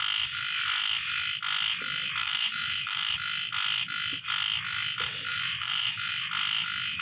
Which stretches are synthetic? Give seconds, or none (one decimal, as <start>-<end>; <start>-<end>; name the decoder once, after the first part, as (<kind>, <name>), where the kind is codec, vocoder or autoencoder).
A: 2.2-3.1 (vocoder, BigVGAN v2); 5.3-6.1